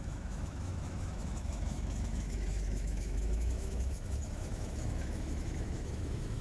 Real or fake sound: fake